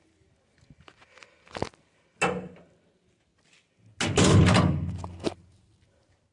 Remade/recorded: recorded